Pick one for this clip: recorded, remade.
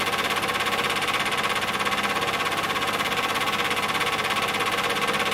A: recorded